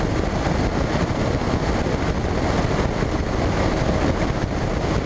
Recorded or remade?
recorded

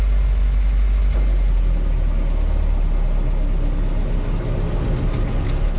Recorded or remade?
recorded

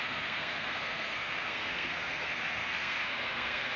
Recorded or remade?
remade